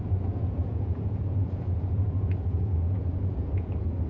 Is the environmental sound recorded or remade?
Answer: remade